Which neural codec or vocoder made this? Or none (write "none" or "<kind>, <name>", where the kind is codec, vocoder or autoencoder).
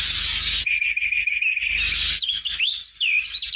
none